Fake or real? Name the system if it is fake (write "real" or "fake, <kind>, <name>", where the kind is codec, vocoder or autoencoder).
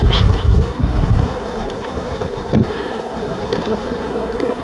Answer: fake, codec, SNAC